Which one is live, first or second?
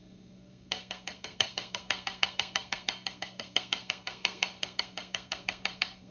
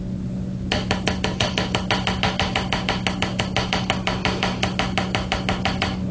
second